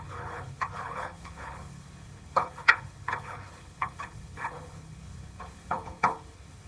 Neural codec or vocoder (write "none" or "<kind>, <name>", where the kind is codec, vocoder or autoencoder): codec, HILCodec